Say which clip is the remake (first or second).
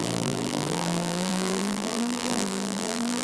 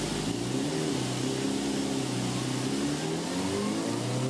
first